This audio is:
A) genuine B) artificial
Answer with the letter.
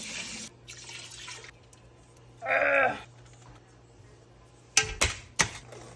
A